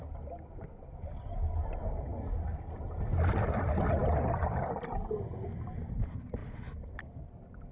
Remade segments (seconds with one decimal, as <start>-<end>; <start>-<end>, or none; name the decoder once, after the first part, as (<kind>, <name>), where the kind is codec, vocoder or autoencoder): none

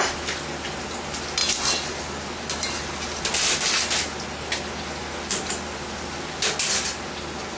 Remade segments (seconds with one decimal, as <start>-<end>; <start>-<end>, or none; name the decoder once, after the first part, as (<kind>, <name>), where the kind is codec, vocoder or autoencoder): none

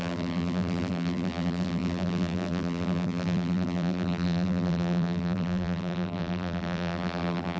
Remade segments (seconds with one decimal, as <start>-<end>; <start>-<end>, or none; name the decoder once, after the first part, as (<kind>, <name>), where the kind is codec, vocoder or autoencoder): 0.0-7.6 (vocoder, BigVGAN v2)

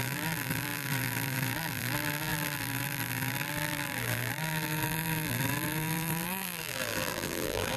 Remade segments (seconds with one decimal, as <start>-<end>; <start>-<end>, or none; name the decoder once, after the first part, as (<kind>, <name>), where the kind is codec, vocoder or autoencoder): 0.0-7.8 (vocoder, BigVGAN v2)

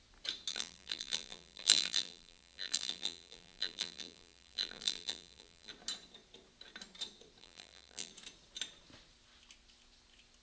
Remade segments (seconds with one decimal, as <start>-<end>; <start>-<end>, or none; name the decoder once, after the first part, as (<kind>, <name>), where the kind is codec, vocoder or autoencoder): 0.5-5.7 (vocoder, BigVGAN v2); 7.4-8.1